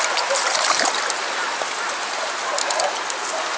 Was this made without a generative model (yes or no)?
yes